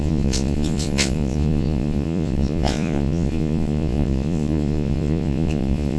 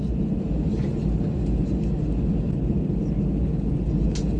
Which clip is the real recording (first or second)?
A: second